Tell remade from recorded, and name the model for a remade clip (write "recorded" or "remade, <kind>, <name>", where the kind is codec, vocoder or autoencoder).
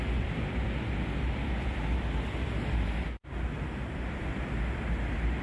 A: recorded